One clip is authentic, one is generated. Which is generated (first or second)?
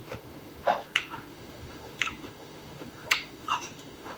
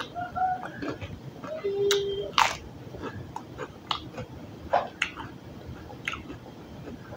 first